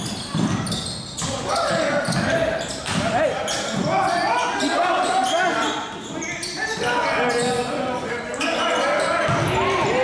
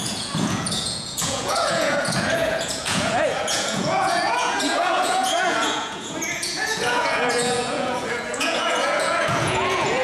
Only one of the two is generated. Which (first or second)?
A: second